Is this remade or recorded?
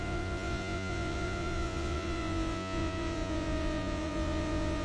remade